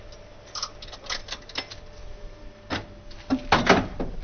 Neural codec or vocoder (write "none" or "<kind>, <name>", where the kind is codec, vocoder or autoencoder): none